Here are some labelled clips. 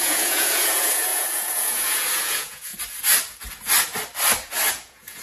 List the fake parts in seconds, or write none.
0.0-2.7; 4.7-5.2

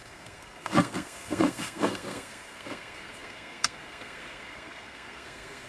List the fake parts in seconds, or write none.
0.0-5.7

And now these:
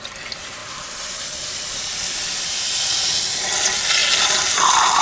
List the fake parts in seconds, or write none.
0.6-2.1; 4.0-5.0

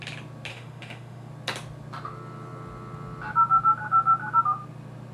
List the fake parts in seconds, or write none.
0.5-1.3

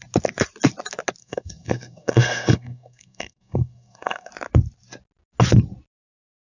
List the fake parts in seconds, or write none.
1.2-4.3

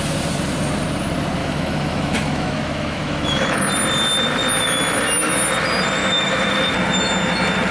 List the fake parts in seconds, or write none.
1.4-3.6; 6.0-6.5

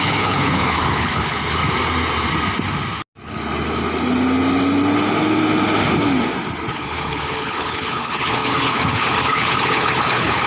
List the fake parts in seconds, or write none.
0.0-1.6; 6.7-10.5

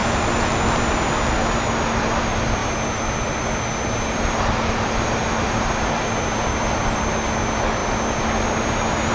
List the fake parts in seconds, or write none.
0.0-0.6